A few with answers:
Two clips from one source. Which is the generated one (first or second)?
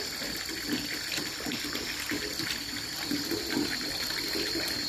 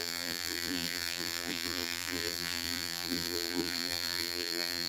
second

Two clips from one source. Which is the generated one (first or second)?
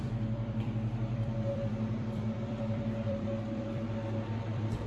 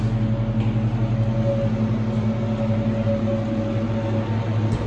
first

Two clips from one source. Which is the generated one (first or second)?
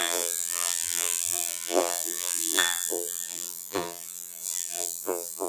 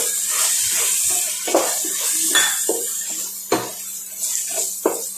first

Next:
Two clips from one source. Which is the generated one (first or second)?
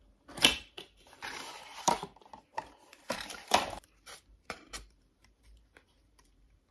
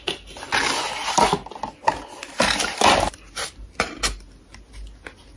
first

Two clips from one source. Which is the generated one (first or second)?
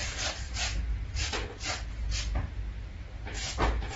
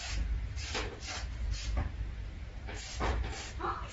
second